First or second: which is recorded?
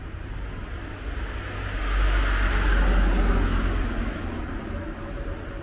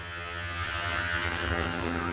first